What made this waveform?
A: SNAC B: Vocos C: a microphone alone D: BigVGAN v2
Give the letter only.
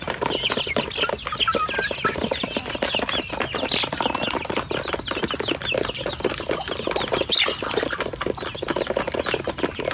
C